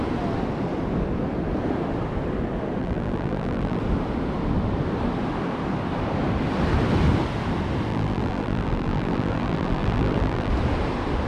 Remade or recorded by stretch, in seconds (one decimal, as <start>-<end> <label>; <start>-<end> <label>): 0.0-2.8 recorded; 2.8-3.8 remade; 3.8-7.9 recorded; 7.9-10.5 remade; 10.5-11.3 recorded